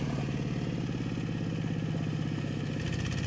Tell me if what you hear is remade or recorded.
recorded